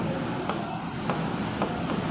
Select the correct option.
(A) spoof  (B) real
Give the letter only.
B